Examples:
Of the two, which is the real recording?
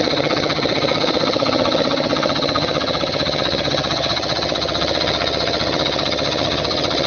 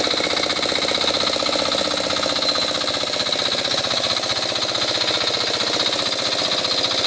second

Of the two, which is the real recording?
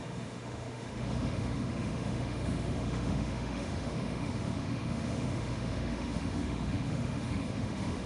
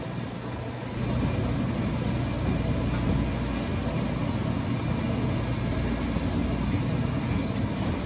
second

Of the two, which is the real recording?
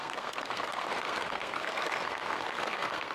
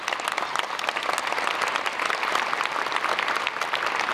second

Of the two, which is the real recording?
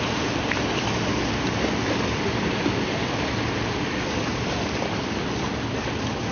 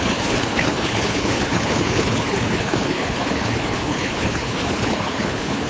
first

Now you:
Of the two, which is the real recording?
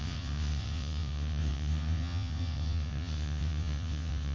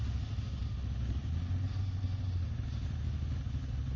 second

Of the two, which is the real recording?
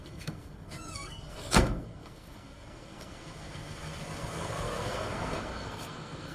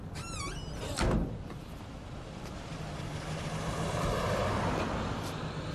second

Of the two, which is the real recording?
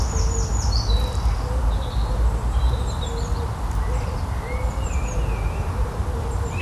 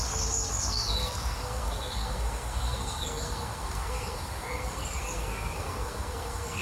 first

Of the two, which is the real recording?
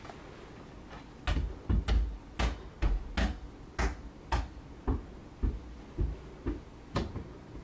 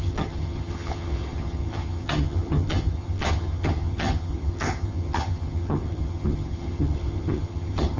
first